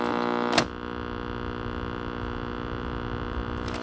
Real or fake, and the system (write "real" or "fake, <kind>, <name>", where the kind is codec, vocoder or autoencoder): real